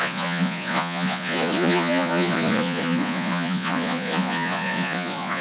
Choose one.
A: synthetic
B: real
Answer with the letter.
A